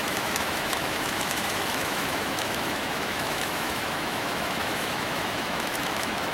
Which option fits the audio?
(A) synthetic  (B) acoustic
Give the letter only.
A